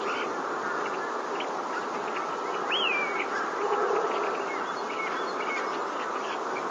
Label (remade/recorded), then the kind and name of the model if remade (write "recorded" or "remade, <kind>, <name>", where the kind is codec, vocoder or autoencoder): recorded